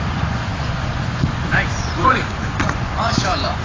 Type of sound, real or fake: fake